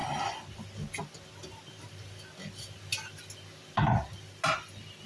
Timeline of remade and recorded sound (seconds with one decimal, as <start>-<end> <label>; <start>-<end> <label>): 0.0-5.1 recorded